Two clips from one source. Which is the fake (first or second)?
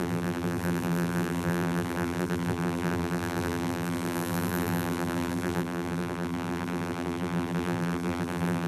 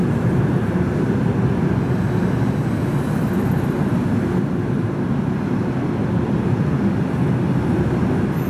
first